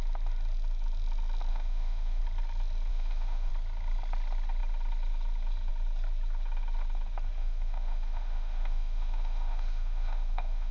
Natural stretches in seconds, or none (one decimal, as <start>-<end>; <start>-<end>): 0.0-1.5; 2.2-2.9; 3.5-7.4